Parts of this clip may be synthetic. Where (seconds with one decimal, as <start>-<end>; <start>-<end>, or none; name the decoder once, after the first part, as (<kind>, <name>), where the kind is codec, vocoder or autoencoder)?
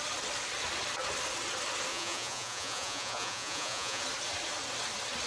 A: 1.9-4.0 (vocoder, Vocos)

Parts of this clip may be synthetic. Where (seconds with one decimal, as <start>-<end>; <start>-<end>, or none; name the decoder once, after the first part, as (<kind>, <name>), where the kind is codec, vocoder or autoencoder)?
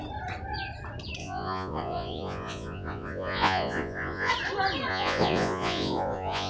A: 1.2-4.3 (vocoder, Vocos); 4.9-6.5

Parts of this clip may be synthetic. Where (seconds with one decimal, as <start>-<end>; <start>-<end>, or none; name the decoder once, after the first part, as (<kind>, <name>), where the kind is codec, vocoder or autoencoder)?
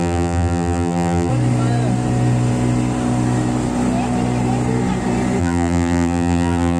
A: 0.0-1.3 (vocoder, BigVGAN v2); 5.4-6.8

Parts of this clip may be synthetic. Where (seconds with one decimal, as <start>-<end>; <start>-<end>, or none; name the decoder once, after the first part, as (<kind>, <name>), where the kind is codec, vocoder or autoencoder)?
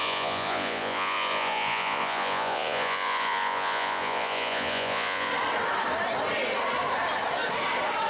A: 0.0-5.3 (vocoder, Vocos)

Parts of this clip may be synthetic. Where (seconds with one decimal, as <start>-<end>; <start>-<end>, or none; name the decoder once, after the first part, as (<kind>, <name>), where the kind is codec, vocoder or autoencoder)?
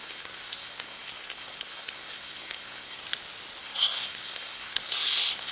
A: 0.0-3.0 (codec, SNAC); 3.6-5.5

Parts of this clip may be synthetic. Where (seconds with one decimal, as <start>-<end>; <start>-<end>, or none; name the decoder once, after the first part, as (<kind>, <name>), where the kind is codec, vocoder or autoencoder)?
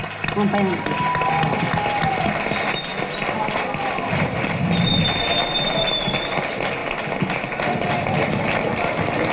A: none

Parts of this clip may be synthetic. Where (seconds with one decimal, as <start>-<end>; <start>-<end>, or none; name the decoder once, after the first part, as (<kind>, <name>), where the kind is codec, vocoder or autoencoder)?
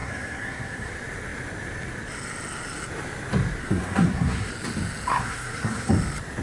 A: 0.0-0.9 (codec, SNAC); 3.6-4.5; 5.1-5.9